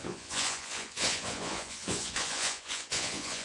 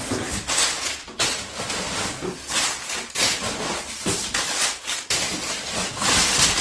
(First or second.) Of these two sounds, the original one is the second